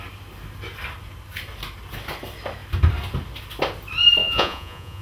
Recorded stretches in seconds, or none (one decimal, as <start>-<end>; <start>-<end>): 0.0-4.2